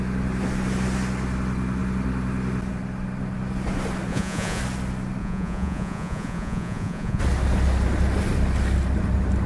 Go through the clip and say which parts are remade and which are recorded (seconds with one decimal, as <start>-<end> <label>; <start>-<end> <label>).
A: 0.0-4.1 recorded; 4.1-4.6 remade; 4.6-5.2 recorded; 5.2-7.2 remade; 7.2-9.5 recorded